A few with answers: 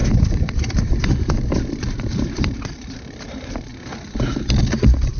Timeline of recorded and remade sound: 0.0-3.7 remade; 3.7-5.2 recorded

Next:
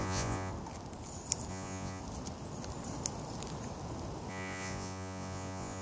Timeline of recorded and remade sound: 0.0-0.5 remade; 0.5-1.5 recorded; 1.5-2.0 remade; 2.0-4.3 recorded; 4.3-5.8 remade